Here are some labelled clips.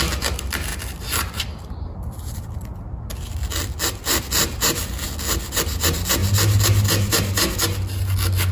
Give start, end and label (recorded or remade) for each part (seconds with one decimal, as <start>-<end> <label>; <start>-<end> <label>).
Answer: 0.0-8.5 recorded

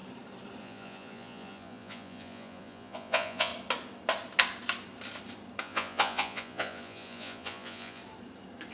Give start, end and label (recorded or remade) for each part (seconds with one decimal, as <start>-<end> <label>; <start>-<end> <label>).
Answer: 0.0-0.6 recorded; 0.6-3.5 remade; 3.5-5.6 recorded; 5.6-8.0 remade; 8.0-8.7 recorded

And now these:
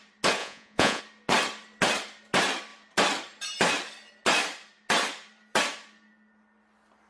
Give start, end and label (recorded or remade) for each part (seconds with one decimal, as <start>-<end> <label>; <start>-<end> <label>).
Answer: 0.0-0.4 recorded; 0.4-1.0 remade; 1.0-7.1 recorded

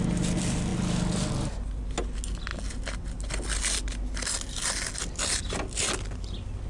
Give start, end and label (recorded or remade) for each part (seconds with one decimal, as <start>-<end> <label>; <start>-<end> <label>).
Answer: 0.0-6.7 recorded